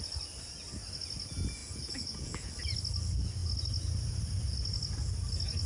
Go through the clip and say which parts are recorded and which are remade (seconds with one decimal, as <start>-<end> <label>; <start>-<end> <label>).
0.0-1.6 recorded; 1.6-2.5 remade; 2.5-5.7 recorded